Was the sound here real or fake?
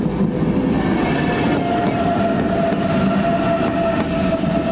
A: real